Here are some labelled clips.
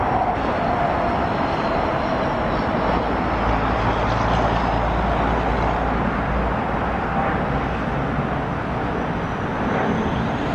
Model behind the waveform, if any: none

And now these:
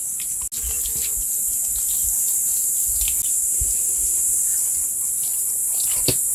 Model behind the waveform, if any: none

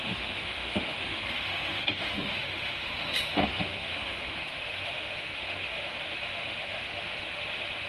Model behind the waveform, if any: autoencoder, DAC-VAE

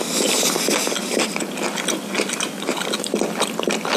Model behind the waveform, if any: none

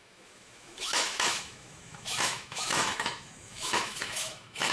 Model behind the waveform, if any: autoencoder, DAC-VAE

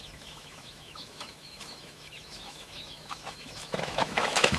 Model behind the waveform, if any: autoencoder, DAC-VAE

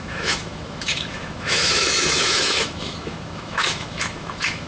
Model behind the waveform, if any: autoencoder, DAC-VAE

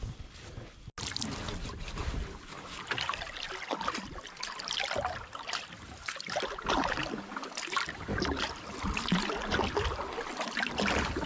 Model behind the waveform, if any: none